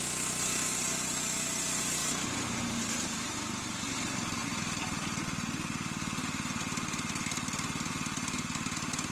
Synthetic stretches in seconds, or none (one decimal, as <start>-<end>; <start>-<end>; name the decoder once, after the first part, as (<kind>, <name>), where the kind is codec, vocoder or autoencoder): none